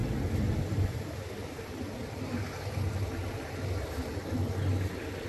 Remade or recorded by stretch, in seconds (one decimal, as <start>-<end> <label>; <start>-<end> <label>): 0.0-5.3 recorded